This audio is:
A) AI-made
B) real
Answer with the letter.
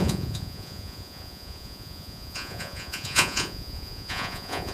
A